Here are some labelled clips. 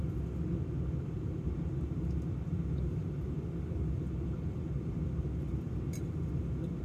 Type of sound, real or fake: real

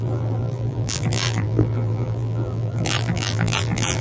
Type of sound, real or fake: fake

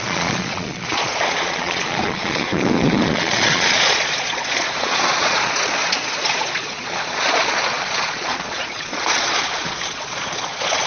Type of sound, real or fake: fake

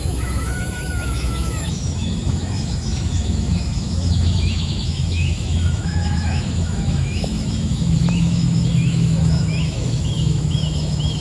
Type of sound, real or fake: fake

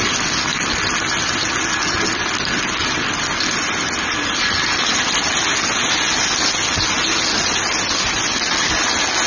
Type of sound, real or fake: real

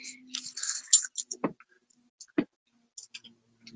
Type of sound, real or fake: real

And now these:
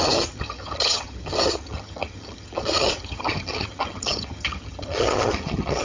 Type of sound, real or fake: fake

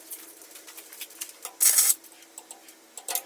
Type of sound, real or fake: real